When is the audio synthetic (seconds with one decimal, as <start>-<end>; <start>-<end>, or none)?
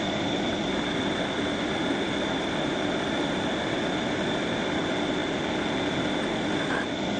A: 0.0-5.2; 6.0-7.2